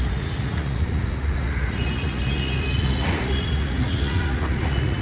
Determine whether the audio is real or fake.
fake